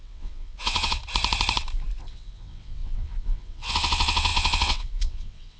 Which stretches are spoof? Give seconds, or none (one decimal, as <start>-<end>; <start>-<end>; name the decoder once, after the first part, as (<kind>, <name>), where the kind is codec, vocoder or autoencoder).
0.0-1.0 (vocoder, WaveNeXt); 2.1-5.6